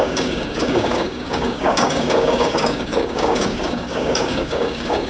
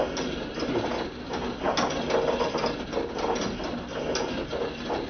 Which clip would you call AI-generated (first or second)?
first